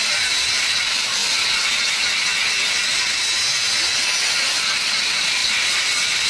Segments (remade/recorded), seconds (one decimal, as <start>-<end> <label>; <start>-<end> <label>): 0.0-1.2 remade; 1.2-5.0 recorded; 5.0-6.3 remade